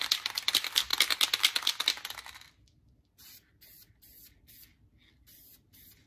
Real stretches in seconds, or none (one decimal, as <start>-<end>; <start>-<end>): 0.0-6.1